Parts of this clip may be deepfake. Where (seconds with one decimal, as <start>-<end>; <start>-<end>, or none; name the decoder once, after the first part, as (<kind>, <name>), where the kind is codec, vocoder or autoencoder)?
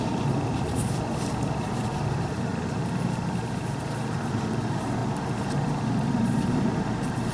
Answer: 0.0-7.3 (vocoder, BigVGAN v2)